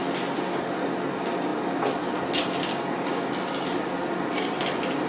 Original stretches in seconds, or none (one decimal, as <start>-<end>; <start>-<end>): 0.0-2.7; 3.3-5.1